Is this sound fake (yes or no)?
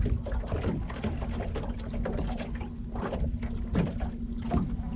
no